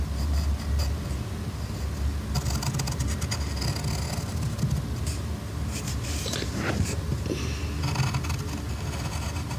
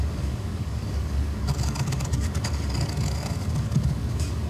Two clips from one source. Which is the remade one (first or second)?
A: second